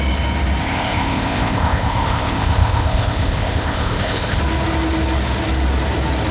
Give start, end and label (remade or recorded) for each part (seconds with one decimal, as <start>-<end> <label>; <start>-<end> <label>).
0.0-0.6 recorded; 0.6-4.4 remade; 4.4-6.3 recorded